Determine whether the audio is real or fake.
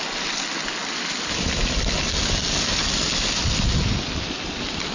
real